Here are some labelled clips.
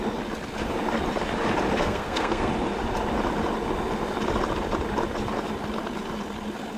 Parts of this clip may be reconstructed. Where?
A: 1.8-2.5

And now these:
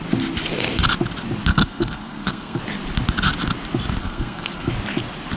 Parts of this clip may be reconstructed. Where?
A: 1.5-2.6; 4.0-4.7

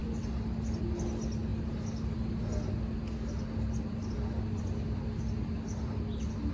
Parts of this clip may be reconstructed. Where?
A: none